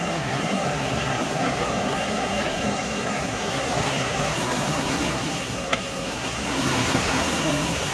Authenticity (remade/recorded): remade